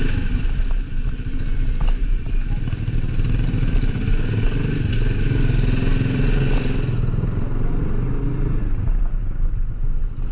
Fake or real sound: real